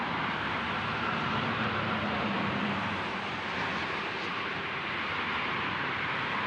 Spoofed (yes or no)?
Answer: yes